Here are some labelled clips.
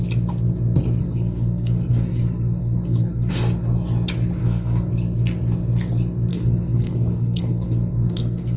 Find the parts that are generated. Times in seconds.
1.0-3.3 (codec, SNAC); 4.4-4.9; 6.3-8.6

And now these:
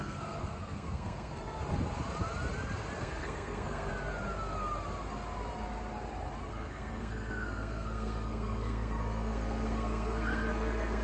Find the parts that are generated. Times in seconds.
0.0-1.6 (codec, SNAC); 3.0-3.9; 6.5-11.0